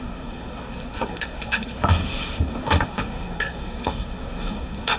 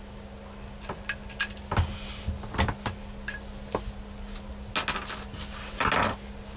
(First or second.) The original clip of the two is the second